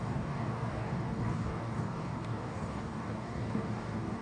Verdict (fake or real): fake